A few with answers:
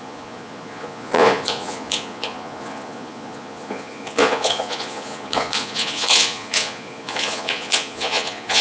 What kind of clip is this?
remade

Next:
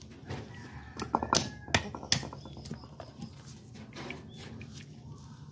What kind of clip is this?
recorded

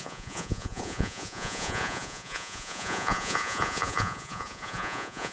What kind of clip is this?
remade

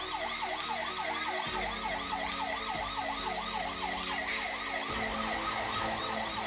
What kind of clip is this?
recorded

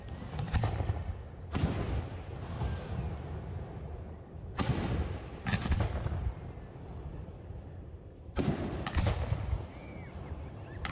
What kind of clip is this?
recorded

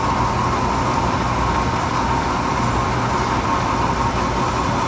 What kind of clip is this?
recorded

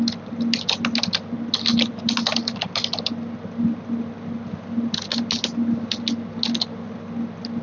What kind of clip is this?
recorded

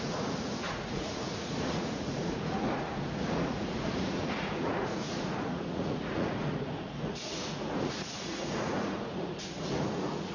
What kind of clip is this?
remade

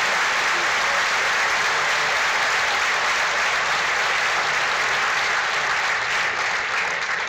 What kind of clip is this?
recorded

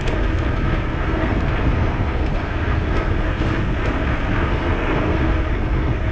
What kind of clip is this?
remade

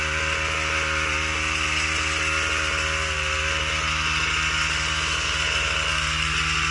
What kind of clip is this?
recorded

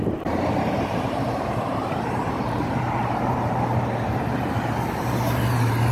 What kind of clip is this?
remade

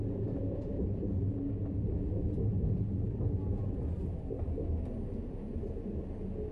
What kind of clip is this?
recorded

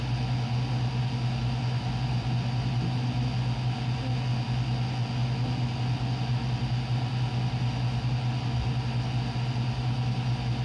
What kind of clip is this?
recorded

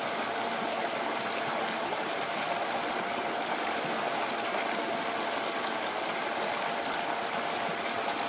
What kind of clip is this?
recorded